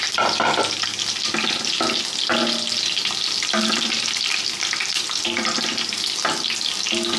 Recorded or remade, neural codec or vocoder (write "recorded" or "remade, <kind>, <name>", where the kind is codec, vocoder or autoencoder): recorded